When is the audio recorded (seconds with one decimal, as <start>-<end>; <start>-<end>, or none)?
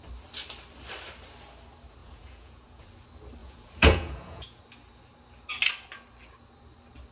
0.0-2.0; 2.8-3.4; 4.6-7.1